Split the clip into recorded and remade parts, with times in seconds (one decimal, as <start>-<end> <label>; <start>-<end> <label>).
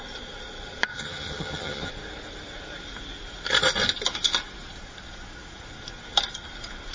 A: 0.0-0.9 recorded; 0.9-1.9 remade; 1.9-6.9 recorded